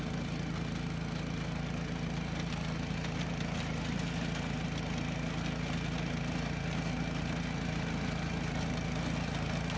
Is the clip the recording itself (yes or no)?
yes